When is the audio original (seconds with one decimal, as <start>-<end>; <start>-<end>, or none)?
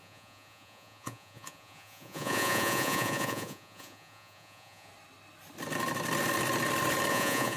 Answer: 4.9-7.1